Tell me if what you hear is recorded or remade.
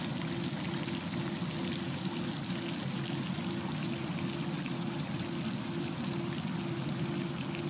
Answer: recorded